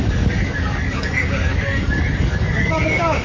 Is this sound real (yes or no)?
no